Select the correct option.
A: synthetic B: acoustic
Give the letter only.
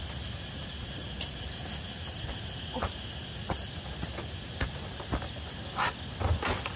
B